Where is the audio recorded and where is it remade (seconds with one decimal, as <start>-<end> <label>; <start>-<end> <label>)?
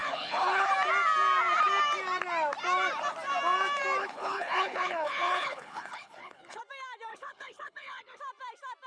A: 0.0-0.7 remade; 0.7-4.0 recorded; 4.0-6.6 remade; 6.6-7.1 recorded; 7.1-8.2 remade; 8.2-8.9 recorded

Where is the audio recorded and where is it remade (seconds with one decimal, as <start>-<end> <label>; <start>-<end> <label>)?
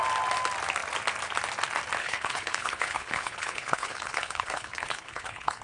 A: 0.0-2.0 recorded; 2.0-5.6 remade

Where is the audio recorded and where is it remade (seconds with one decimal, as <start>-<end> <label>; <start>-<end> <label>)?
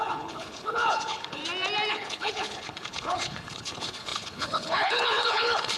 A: 0.0-1.4 remade; 1.4-1.9 recorded; 1.9-5.8 remade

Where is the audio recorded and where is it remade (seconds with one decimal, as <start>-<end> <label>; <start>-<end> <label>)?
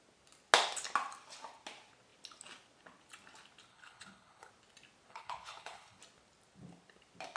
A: 0.0-3.7 recorded; 3.7-4.5 remade; 4.5-5.1 recorded; 5.1-6.0 remade; 6.0-7.4 recorded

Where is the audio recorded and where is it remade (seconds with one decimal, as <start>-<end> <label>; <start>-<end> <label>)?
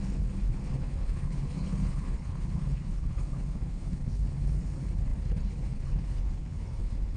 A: 0.0-7.2 remade